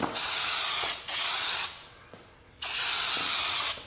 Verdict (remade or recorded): remade